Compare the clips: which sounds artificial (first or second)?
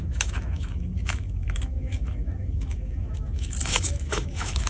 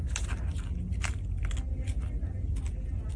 first